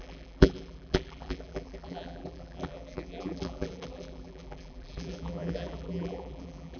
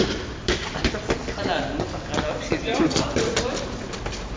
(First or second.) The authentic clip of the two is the second